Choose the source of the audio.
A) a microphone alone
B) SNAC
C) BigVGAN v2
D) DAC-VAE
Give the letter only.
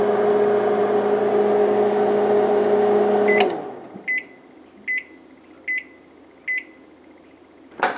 A